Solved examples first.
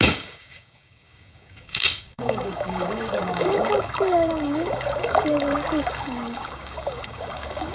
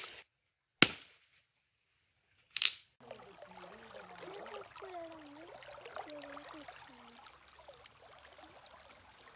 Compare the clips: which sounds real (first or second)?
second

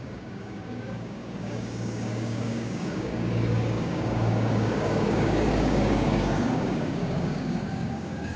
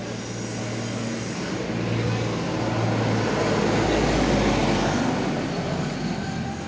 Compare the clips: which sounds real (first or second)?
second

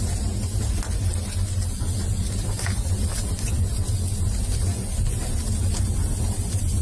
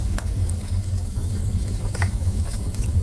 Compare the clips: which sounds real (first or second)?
first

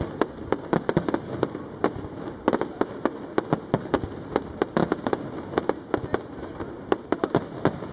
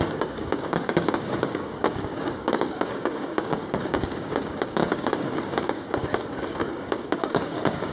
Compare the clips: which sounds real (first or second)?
first